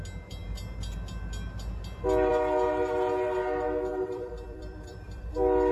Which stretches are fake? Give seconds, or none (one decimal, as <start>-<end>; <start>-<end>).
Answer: 3.9-5.3